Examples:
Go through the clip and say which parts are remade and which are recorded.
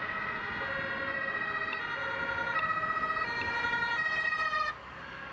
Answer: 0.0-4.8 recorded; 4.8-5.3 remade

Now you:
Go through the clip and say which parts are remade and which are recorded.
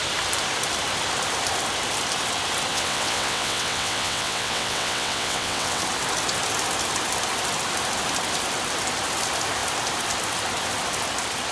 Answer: 0.0-2.7 recorded; 2.7-5.8 remade; 5.8-11.5 recorded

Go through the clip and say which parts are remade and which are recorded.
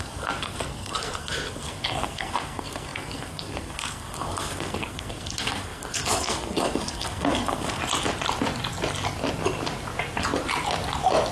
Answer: 0.0-7.8 remade; 7.8-11.3 recorded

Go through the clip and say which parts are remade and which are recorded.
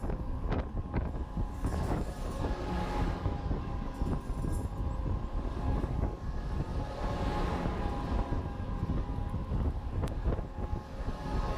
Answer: 0.0-4.1 remade; 4.1-5.5 recorded; 5.5-6.7 remade; 6.7-8.4 recorded; 8.4-11.6 remade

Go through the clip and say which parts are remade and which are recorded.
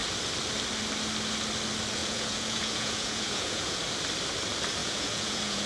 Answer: 0.0-2.0 recorded; 2.0-3.8 remade; 3.8-4.8 recorded; 4.8-5.7 remade